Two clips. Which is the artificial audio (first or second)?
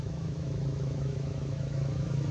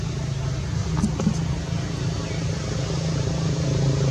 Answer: first